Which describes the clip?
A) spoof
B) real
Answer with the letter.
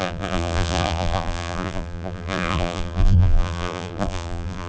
A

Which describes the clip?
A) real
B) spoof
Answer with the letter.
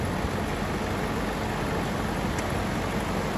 A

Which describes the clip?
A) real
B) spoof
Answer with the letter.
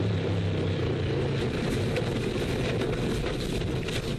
A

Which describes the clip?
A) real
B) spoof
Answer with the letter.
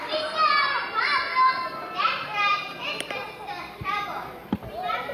A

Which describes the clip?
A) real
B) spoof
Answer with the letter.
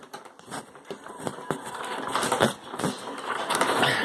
B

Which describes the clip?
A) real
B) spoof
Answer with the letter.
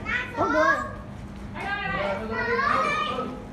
A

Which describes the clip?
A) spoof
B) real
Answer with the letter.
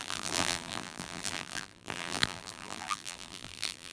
A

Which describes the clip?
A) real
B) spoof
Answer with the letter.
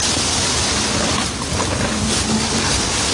B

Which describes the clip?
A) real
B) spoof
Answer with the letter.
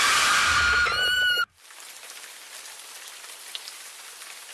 B